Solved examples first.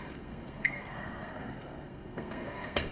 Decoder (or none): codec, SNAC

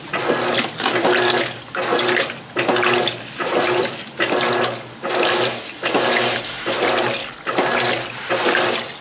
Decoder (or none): none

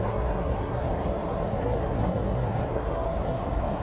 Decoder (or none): codec, SNAC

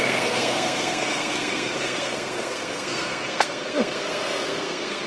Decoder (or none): codec, SNAC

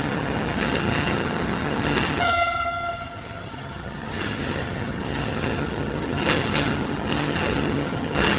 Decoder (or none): vocoder, HiFi-GAN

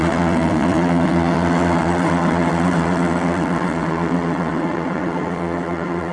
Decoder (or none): vocoder, WaveNeXt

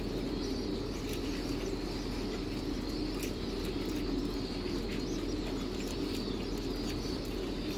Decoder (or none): none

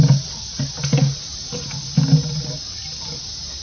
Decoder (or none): none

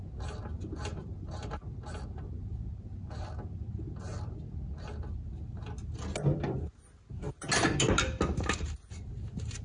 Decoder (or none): none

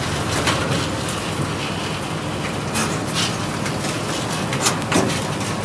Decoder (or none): none